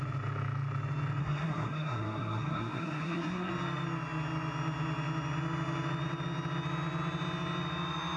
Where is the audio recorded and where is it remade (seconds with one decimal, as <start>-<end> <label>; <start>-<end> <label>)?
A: 0.0-1.2 recorded; 1.2-3.5 remade; 3.5-8.2 recorded